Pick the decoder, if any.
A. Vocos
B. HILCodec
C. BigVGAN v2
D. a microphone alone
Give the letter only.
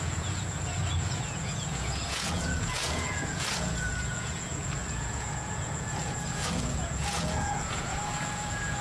A